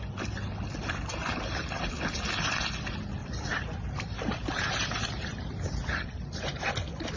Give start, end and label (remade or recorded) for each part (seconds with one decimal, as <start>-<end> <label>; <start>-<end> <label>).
0.0-1.1 recorded; 1.1-1.9 remade; 1.9-3.2 recorded; 3.2-6.7 remade; 6.7-7.2 recorded